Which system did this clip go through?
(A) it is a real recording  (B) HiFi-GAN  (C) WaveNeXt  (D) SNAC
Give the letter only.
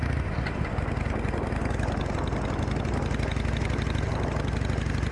A